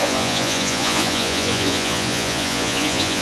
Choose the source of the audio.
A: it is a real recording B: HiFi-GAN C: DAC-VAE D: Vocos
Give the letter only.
D